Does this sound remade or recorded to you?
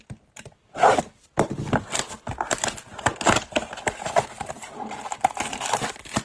recorded